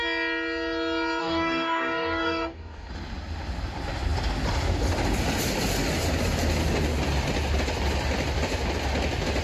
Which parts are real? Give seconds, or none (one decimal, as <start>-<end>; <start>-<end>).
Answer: 0.0-1.2; 2.9-9.4